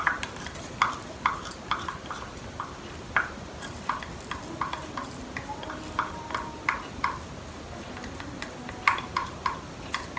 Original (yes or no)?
yes